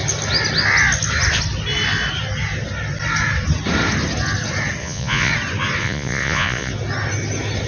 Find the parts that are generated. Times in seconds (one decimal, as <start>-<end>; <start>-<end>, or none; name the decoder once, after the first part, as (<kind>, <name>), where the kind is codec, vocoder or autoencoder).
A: 4.8-5.3 (vocoder, Vocos); 5.8-6.7